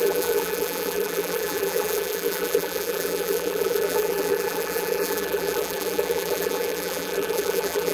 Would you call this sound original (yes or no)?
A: no